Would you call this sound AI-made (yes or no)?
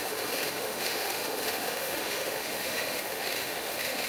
yes